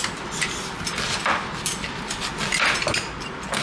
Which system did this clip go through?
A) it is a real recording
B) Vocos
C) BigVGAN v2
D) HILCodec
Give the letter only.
A